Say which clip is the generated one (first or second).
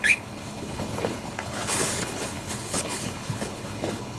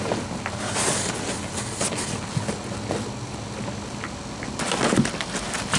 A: first